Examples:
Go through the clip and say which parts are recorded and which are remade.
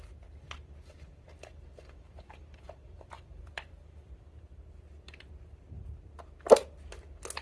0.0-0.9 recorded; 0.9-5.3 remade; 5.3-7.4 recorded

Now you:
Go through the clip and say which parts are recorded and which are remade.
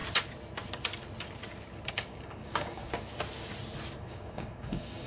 0.0-1.9 recorded; 1.9-2.8 remade; 2.8-4.0 recorded; 4.0-5.1 remade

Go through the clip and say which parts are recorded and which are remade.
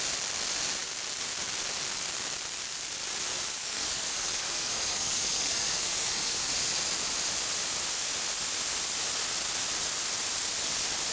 0.0-3.6 recorded; 3.6-6.5 remade; 6.5-11.1 recorded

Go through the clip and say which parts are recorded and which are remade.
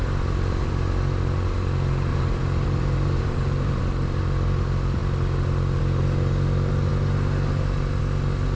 0.0-2.1 recorded; 2.1-3.8 remade; 3.8-8.6 recorded